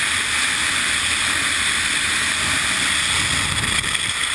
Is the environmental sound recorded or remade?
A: recorded